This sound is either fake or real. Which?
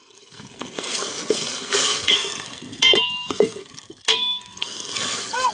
fake